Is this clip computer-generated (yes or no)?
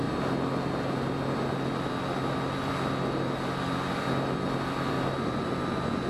no